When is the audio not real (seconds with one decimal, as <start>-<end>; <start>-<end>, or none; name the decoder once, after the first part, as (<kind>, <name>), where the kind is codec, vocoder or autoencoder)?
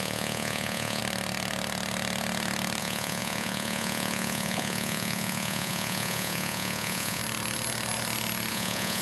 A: 0.0-1.0 (vocoder, Vocos); 2.8-7.2; 8.5-9.0